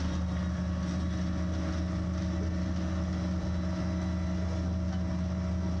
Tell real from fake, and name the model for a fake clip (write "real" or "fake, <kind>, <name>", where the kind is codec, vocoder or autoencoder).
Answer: real